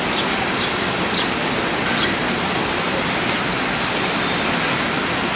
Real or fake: real